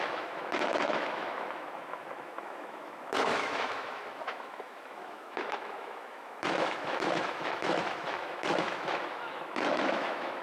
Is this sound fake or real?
fake